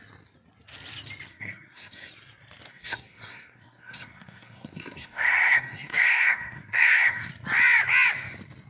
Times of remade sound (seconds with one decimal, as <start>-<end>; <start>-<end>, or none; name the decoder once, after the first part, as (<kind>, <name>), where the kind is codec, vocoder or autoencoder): 1.3-2.1 (codec, SNAC); 2.7-7.3